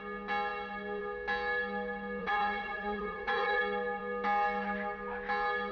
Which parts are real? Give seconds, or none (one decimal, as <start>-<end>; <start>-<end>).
0.0-2.2; 3.6-5.7

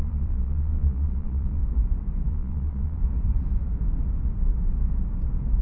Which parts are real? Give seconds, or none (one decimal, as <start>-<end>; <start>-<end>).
1.6-2.3; 3.0-5.6

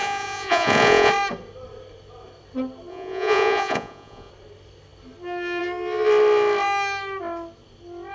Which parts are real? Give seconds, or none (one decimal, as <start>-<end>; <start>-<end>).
1.1-2.9; 4.3-8.1

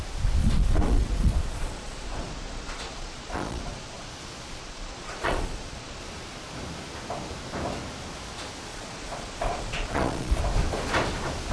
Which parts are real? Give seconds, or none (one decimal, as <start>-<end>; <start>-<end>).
0.0-0.4; 4.1-4.6; 6.0-8.7; 10.4-11.5